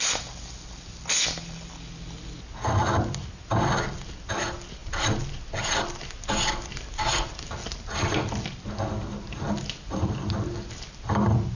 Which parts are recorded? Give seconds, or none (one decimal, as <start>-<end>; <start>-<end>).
0.0-11.6